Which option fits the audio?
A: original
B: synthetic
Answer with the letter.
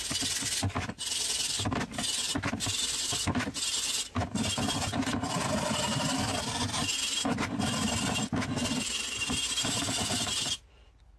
B